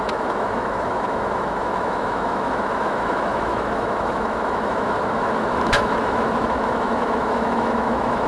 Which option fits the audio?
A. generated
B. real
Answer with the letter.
A